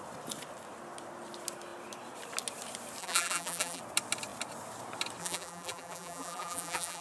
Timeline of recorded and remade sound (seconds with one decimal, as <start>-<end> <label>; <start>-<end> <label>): 0.0-3.0 recorded; 3.0-3.8 remade; 3.8-5.2 recorded; 5.2-7.0 remade

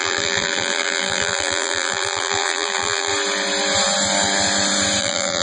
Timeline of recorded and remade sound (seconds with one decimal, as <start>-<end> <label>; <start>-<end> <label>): 0.0-3.1 remade; 3.1-5.0 recorded; 5.0-5.4 remade

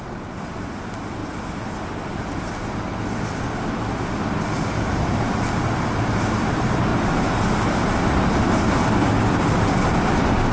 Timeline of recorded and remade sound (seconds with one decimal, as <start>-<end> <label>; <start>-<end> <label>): 0.0-10.5 recorded

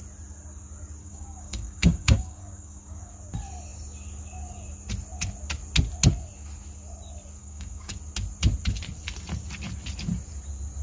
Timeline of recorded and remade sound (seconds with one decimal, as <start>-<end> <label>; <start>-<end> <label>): 0.0-1.0 recorded; 1.0-3.1 remade; 3.1-7.4 recorded; 7.4-8.0 remade; 8.0-10.8 recorded

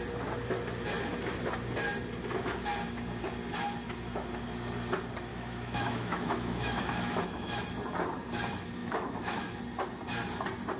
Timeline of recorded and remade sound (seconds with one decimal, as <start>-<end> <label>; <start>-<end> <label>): 0.0-5.3 recorded; 5.3-7.6 remade; 7.6-8.8 recorded; 8.8-9.6 remade; 9.6-10.8 recorded

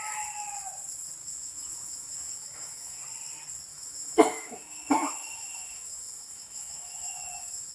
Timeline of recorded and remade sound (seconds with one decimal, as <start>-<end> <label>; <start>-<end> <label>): 0.0-1.2 recorded; 1.2-3.0 remade; 3.0-3.7 recorded; 3.7-7.7 remade